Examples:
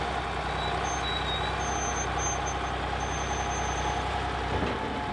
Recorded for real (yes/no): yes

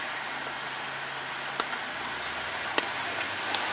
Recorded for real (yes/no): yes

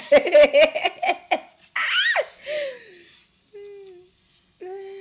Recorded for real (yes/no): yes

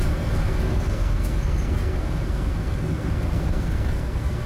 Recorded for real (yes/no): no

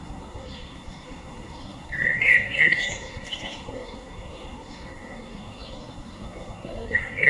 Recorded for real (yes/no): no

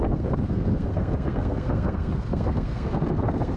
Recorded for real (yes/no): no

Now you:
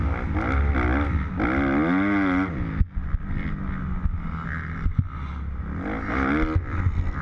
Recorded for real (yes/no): yes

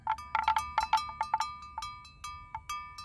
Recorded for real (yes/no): yes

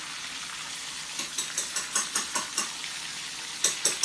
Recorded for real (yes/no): yes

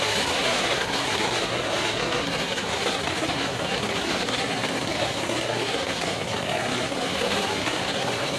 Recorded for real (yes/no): no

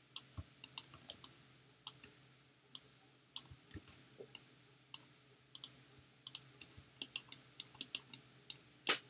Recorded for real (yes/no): yes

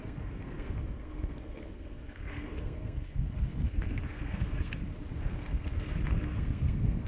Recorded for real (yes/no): no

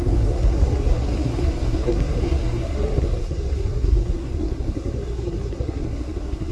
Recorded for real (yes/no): no